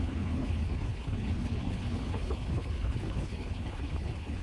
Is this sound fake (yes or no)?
yes